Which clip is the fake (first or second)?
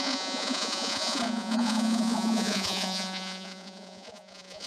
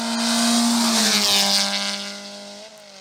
first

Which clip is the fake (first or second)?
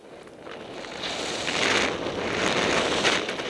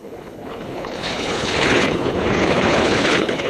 second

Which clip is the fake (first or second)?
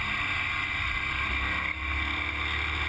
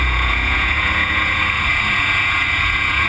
second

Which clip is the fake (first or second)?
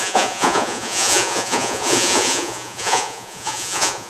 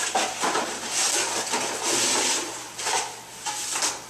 first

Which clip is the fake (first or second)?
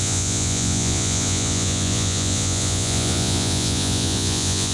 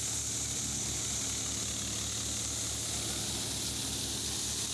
first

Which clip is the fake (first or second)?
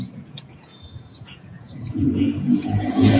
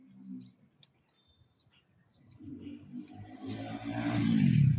first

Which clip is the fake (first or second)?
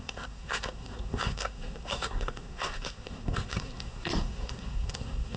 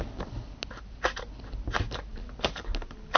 first